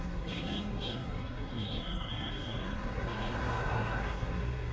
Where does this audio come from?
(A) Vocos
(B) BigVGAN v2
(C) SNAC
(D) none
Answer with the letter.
C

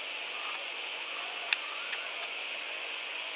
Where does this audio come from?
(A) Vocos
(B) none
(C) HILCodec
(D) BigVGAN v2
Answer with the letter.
A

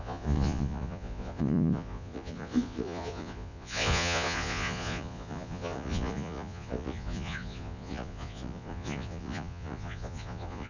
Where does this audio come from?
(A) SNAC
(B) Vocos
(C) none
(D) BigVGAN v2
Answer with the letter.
B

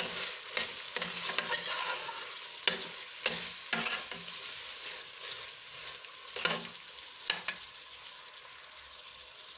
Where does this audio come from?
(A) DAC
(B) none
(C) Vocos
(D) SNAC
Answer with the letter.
B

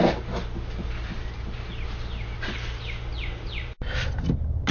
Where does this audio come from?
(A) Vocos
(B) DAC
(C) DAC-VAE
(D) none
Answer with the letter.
D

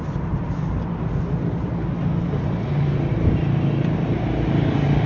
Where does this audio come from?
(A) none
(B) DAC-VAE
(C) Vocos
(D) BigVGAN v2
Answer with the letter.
A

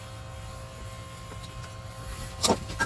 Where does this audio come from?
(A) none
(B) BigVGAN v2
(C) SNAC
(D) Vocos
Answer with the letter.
A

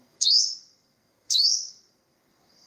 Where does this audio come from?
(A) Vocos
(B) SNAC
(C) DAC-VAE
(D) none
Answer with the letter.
B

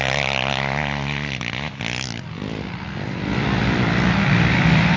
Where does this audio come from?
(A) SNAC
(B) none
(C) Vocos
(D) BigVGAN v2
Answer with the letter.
B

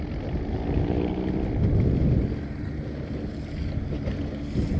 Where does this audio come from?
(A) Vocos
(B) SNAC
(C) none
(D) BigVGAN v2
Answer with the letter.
C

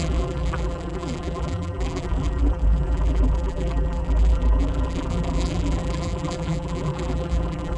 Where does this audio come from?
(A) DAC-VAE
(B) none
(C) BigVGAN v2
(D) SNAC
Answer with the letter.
C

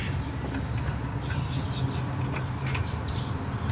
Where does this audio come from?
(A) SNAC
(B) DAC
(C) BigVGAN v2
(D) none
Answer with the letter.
D